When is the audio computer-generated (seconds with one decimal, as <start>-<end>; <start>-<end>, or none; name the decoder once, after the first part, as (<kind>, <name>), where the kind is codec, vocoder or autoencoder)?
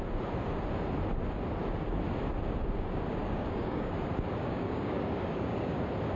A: 3.2-3.9 (codec, DAC); 4.4-5.8